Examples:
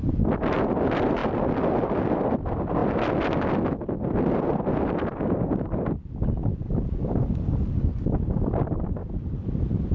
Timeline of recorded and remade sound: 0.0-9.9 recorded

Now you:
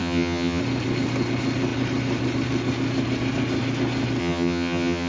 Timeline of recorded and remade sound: 0.0-0.6 remade; 0.6-4.2 recorded; 4.2-5.1 remade

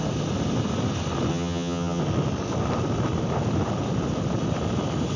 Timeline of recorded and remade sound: 0.0-1.3 recorded; 1.3-2.0 remade; 2.0-5.2 recorded